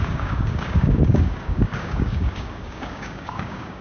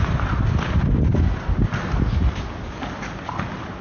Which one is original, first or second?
second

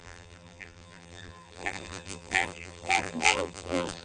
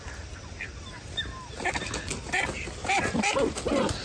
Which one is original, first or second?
second